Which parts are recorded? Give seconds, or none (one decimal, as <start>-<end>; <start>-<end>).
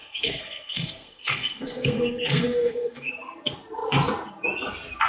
3.1-5.1